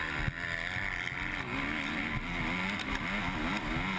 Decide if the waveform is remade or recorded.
recorded